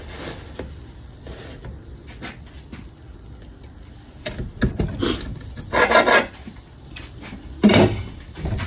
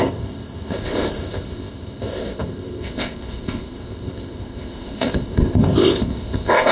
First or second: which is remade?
second